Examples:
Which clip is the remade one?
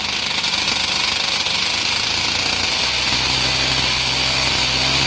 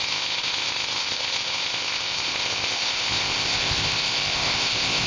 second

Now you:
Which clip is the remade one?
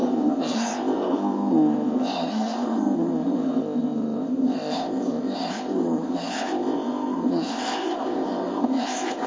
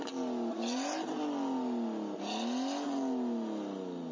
first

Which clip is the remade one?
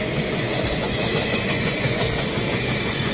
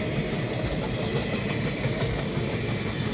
first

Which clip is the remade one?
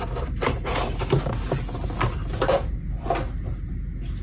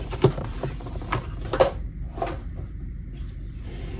second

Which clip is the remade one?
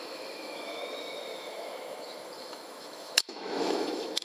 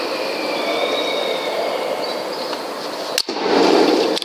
first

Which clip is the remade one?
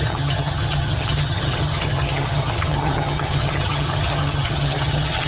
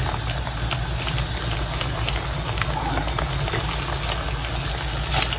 first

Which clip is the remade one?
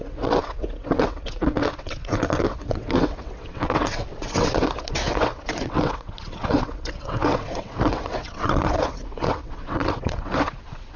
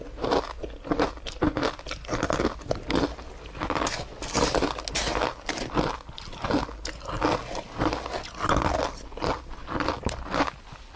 first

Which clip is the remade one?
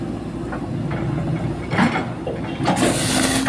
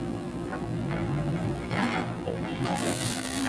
second